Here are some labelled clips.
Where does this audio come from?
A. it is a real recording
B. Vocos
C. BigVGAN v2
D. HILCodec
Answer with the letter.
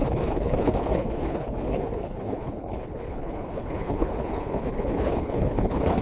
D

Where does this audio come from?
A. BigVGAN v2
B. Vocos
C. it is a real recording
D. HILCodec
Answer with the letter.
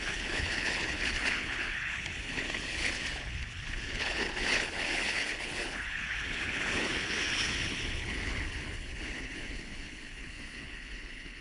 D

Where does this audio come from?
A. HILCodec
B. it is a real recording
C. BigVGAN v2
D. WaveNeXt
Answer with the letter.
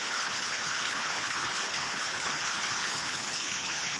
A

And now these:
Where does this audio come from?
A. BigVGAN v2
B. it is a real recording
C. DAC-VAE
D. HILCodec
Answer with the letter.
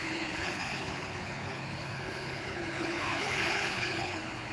D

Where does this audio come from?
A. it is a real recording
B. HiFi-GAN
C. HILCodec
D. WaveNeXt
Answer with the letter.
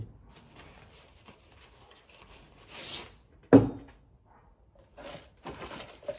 A